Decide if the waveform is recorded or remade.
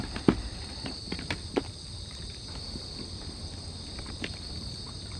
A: remade